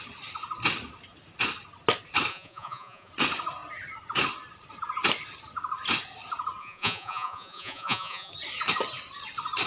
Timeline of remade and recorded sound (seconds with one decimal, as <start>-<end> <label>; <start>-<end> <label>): 0.0-2.3 recorded; 2.3-3.1 remade; 3.1-6.6 recorded; 6.6-8.3 remade; 8.3-9.7 recorded